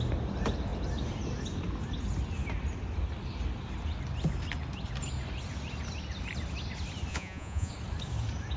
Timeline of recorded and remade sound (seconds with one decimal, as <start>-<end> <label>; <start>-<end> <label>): 0.0-7.1 recorded; 7.1-7.7 remade; 7.7-8.6 recorded